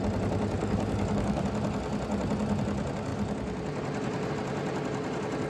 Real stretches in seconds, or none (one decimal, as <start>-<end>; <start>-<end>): 0.0-0.6; 1.4-5.5